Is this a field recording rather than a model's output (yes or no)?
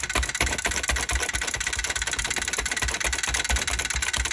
yes